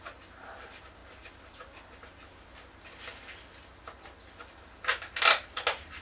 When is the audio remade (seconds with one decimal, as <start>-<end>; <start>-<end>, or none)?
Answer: none